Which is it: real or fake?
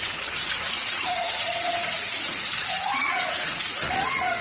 fake